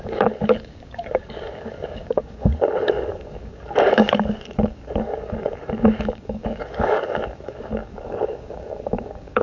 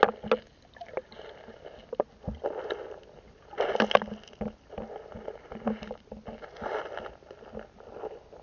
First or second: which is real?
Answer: second